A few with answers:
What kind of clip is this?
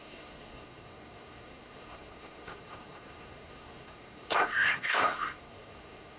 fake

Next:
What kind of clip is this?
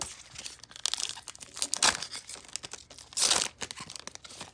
real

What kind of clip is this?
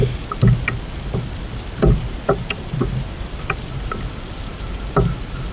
real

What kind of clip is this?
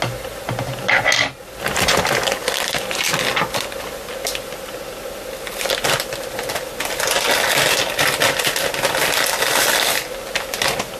real